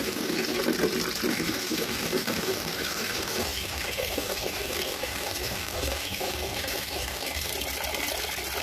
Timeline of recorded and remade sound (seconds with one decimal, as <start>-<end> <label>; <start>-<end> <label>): 0.0-0.6 remade; 0.6-1.3 recorded; 1.3-7.5 remade; 7.5-8.6 recorded